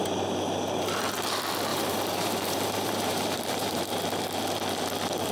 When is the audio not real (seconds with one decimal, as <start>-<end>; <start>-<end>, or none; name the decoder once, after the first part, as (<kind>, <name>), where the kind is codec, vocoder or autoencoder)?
1.7-4.0 (vocoder, BigVGAN v2)